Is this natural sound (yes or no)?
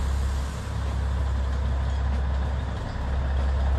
yes